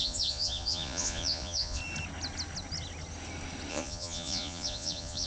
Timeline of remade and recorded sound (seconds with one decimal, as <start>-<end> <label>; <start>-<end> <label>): 0.0-1.8 remade; 1.8-3.7 recorded; 3.7-5.3 remade